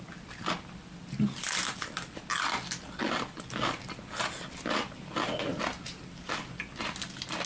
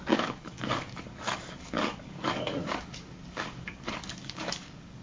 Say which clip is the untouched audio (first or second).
first